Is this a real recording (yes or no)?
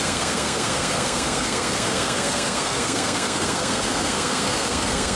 no